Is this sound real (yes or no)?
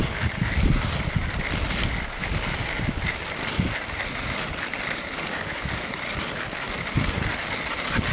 yes